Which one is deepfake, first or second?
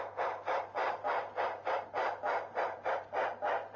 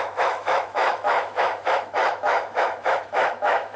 second